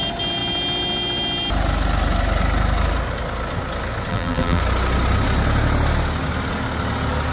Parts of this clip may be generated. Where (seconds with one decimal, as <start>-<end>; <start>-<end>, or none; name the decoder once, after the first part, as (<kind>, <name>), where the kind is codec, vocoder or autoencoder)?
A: 4.1-4.6 (vocoder, BigVGAN v2)